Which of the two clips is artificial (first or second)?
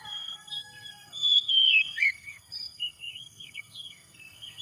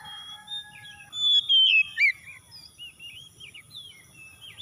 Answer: first